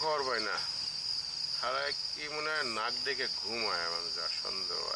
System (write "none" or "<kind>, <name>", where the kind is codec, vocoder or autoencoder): none